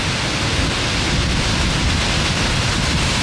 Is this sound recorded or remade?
recorded